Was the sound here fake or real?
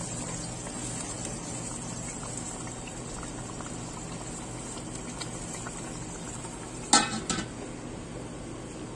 real